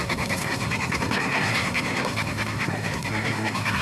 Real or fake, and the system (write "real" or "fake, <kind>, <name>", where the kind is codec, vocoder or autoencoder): fake, codec, SNAC